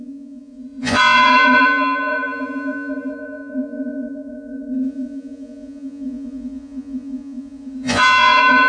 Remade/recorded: remade